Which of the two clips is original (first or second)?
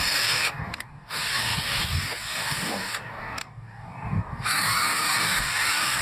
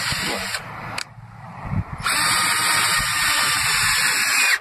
second